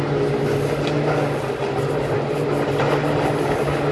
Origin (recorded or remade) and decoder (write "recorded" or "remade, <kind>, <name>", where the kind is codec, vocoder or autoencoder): recorded